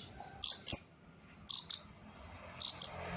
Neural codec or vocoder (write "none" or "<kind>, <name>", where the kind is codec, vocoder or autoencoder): none